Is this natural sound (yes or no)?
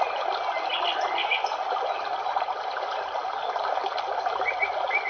yes